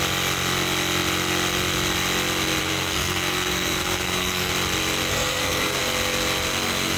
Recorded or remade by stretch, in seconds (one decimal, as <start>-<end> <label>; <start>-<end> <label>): 0.0-2.6 recorded; 2.6-4.5 remade; 4.5-5.1 recorded; 5.1-5.8 remade; 5.8-7.0 recorded